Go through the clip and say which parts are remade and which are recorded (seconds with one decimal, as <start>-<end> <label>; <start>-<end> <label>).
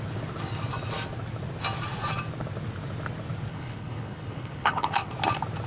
0.0-3.5 recorded; 3.5-5.1 remade; 5.1-5.7 recorded